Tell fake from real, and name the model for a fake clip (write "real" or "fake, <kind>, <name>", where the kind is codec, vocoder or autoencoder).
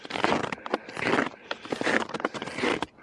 real